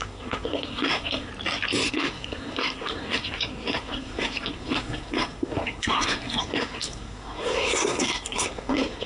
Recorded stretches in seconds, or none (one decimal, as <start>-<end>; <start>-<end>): 1.3-1.9